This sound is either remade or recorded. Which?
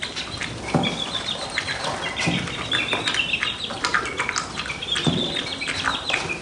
recorded